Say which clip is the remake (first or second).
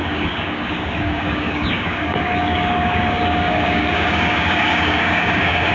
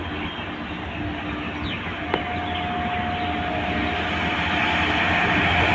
first